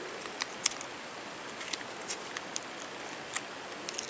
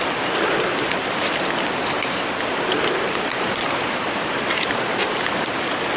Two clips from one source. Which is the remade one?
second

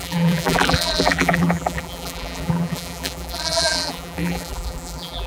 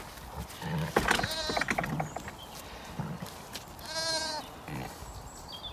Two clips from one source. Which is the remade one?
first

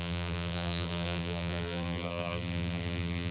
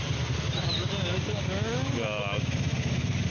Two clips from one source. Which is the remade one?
first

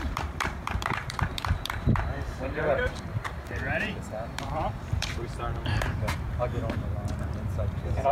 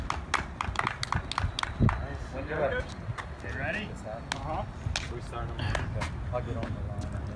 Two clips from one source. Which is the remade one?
first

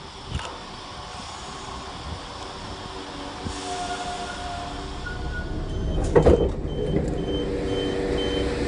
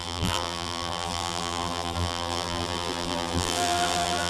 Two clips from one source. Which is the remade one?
second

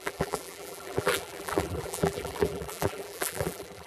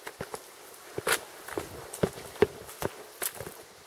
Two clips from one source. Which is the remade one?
first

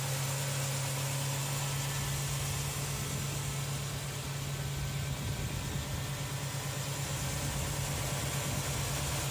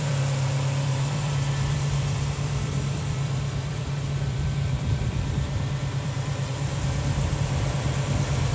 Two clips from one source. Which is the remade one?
second